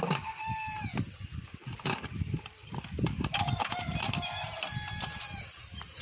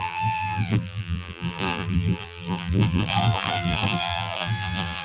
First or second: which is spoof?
second